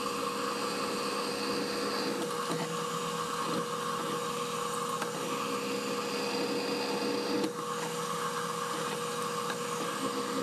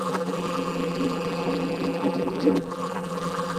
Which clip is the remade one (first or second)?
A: second